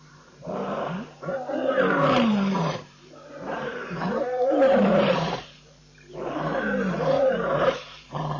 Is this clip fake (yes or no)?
yes